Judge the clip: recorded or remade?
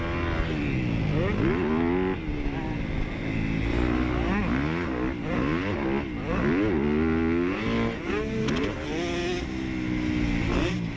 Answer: recorded